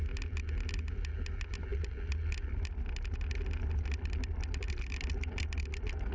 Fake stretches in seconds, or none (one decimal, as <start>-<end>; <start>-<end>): none